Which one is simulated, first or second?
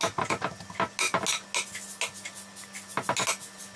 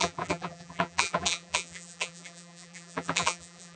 second